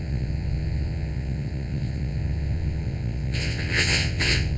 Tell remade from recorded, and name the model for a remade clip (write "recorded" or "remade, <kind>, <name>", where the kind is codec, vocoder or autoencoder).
remade, vocoder, WaveNeXt